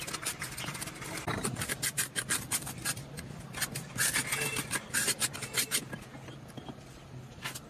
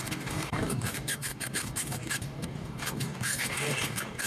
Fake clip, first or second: second